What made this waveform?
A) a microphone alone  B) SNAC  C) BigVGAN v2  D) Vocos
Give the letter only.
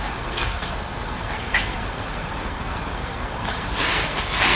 B